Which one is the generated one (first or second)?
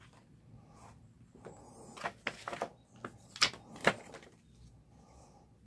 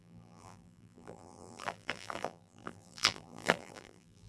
second